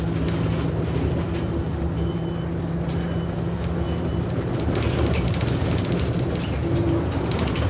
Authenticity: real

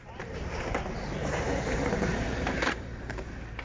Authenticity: fake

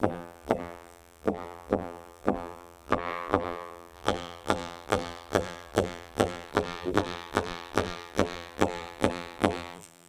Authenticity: fake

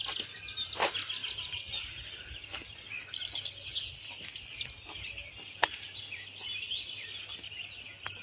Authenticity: real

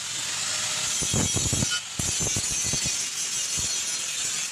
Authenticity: real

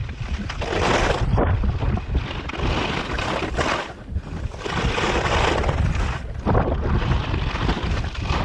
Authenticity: real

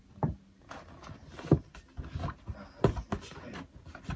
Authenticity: real